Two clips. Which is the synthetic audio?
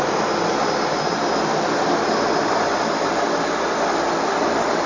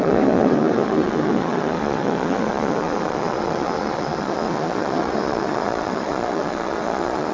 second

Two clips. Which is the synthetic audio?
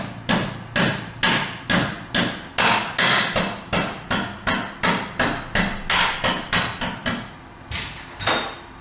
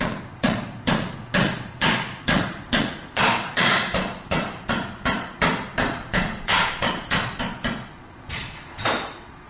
second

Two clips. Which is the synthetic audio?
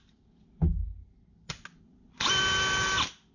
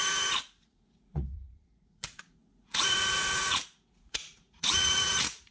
second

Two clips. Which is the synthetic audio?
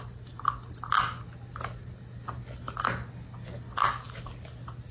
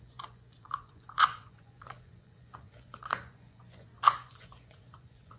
second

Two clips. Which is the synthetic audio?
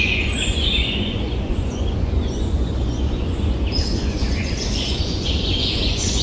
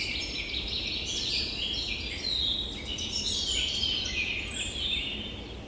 first